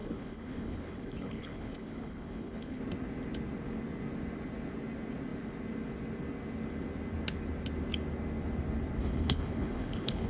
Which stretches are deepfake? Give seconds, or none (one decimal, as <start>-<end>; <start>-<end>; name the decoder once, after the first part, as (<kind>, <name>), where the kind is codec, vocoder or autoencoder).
0.0-2.8 (codec, HILCodec); 9.0-10.3